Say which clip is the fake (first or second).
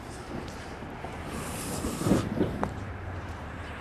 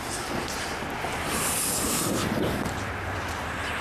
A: first